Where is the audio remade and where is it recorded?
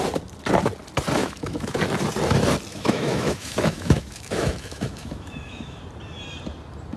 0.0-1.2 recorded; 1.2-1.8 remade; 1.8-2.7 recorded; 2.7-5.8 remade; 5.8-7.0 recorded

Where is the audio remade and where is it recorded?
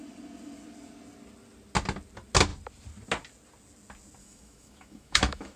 0.0-4.2 recorded; 4.2-5.6 remade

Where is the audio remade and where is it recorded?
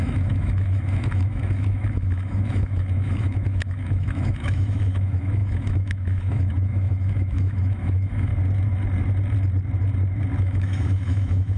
0.0-8.3 remade; 8.3-10.4 recorded; 10.4-11.6 remade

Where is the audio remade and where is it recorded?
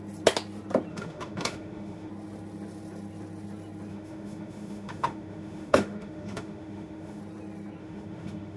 0.0-0.9 recorded; 0.9-2.1 remade; 2.1-3.9 recorded; 3.9-7.2 remade; 7.2-7.8 recorded; 7.8-8.6 remade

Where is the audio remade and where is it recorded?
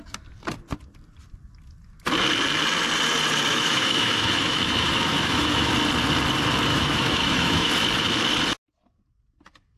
0.0-3.5 recorded; 3.5-5.7 remade; 5.7-6.7 recorded; 6.7-7.7 remade; 7.7-9.8 recorded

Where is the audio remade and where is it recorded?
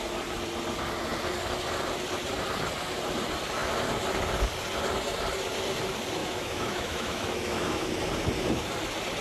0.0-6.2 recorded; 6.2-7.9 remade; 7.9-9.2 recorded